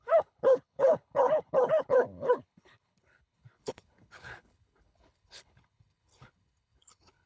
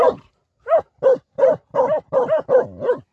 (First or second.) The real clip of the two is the second